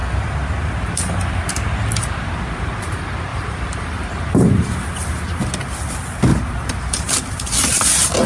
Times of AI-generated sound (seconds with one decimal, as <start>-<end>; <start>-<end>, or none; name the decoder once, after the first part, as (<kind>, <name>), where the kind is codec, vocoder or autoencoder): 3.3-5.4 (vocoder, BigVGAN v2); 6.3-7.1